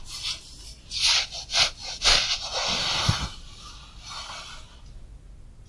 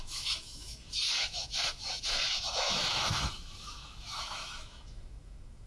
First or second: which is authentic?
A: first